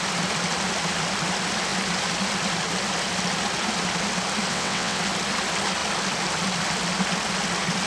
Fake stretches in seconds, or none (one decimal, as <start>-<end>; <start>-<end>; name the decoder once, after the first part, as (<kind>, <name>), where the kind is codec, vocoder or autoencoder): 4.5-5.0 (vocoder, WaveNeXt)